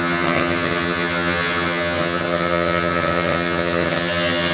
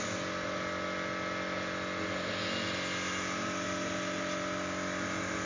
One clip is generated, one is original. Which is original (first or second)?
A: second